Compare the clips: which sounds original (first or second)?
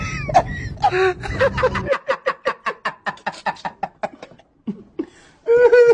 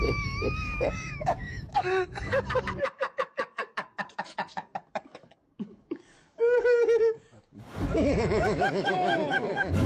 first